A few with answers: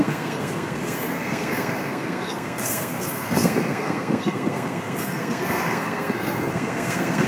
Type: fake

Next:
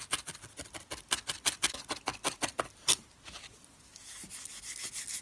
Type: real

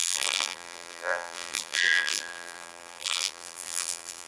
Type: fake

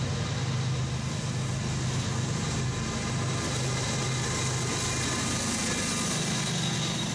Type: real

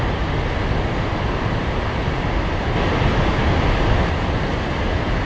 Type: real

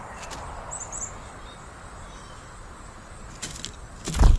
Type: real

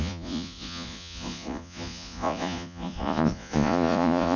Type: fake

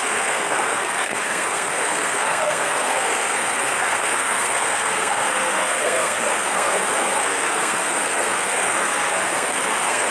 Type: fake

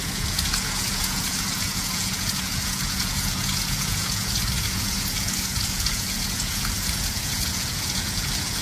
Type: fake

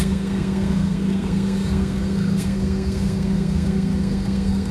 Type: fake